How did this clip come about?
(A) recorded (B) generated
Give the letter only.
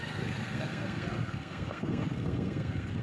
B